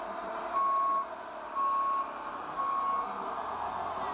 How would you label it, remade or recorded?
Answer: recorded